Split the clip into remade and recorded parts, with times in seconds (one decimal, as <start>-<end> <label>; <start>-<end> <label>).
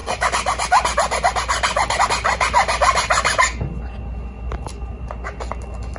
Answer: 0.0-6.0 recorded